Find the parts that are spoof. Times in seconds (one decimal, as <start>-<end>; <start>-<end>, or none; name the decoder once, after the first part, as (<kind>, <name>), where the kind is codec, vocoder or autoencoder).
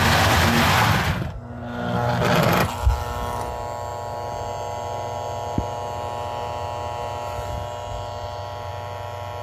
none